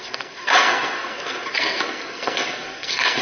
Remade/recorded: remade